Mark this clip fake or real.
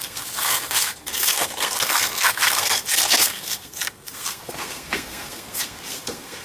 fake